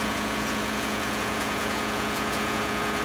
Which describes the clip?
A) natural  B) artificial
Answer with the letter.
B